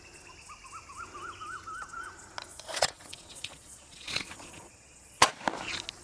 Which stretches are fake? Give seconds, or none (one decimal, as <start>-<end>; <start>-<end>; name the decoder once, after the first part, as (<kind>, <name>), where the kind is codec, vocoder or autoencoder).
2.5-5.3 (vocoder, Vocos)